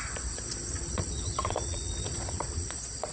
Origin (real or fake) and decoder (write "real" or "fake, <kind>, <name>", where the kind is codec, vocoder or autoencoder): fake, vocoder, Vocos